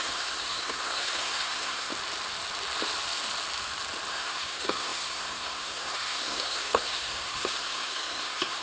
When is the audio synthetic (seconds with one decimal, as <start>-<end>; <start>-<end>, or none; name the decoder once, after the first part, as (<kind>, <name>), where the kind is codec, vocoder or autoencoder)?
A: 0.0-1.9 (codec, SNAC); 4.1-8.6